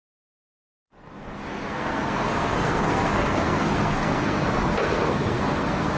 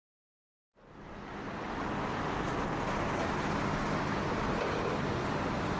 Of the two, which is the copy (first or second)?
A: first